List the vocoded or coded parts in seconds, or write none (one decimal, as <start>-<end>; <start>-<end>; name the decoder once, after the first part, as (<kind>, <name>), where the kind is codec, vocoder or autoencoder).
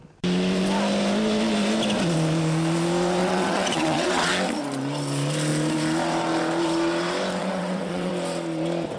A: 3.2-4.3 (vocoder, WaveNeXt); 7.4-8.1